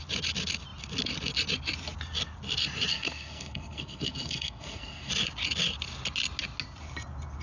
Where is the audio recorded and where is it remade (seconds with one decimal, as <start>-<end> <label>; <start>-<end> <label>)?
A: 0.0-2.9 recorded; 2.9-5.1 remade; 5.1-7.4 recorded